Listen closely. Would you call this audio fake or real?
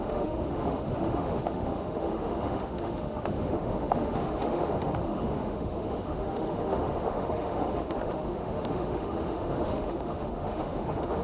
fake